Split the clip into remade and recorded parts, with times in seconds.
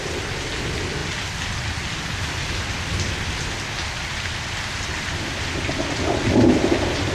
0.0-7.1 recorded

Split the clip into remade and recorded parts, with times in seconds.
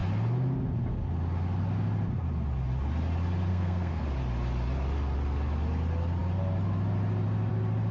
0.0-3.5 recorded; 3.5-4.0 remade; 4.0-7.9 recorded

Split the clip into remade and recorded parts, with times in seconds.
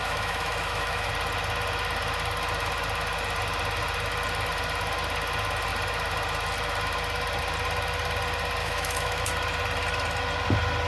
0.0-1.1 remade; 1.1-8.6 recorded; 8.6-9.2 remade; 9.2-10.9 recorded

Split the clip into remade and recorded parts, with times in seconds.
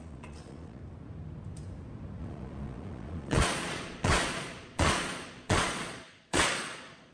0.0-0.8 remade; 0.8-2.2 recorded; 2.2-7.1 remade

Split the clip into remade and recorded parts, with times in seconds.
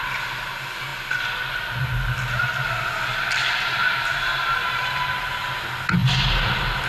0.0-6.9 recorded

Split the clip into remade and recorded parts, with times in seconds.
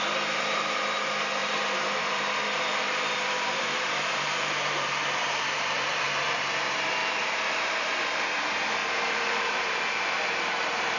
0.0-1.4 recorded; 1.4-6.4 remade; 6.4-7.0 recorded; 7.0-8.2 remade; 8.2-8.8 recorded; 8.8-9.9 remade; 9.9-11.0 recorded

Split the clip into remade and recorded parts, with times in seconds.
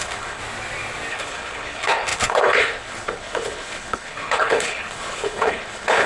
0.0-0.4 remade; 0.4-1.1 recorded; 1.1-6.1 remade